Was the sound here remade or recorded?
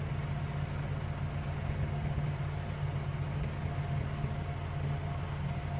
recorded